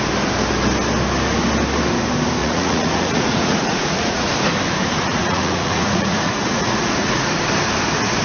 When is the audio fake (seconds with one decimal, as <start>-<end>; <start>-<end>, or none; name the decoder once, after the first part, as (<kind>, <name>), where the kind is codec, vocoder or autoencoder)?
2.4-4.3 (vocoder, Vocos); 5.1-7.3